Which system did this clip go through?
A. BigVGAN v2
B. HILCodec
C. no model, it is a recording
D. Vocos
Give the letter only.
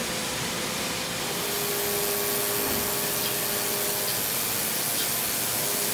C